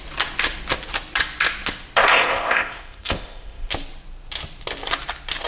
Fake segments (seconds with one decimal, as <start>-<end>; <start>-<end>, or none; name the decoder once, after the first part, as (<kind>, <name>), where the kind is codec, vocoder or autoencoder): 2.1-3.7 (codec, ZipCodec)

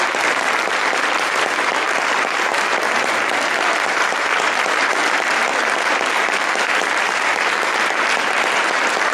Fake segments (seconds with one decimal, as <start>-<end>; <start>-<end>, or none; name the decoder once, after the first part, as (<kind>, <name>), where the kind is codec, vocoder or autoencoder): none

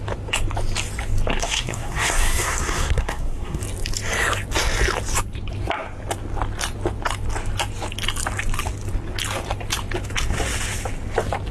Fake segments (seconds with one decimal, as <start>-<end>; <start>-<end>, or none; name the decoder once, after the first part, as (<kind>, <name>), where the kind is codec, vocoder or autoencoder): 1.3-3.6 (codec, SNAC)

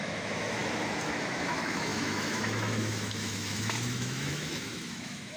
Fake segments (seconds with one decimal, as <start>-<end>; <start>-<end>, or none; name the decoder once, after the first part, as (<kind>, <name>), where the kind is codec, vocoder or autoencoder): 0.0-5.4 (autoencoder, DAC-VAE)